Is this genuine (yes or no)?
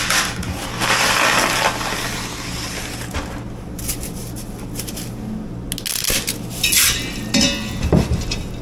yes